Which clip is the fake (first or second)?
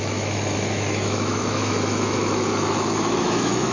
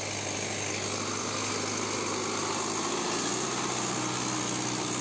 first